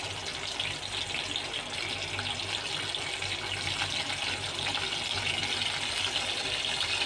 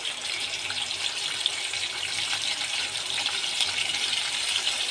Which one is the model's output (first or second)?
second